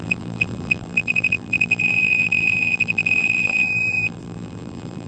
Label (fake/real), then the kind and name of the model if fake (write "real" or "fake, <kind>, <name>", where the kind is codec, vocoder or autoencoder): fake, vocoder, BigVGAN v2